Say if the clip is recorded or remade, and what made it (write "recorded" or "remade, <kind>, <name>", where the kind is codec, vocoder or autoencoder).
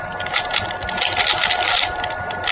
recorded